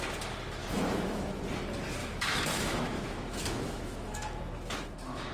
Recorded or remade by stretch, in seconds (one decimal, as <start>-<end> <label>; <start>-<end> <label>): 0.0-0.6 recorded; 0.6-1.4 remade; 1.4-2.0 recorded; 2.0-5.3 remade